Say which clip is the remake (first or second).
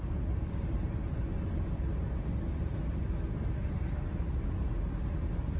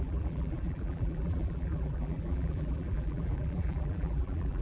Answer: second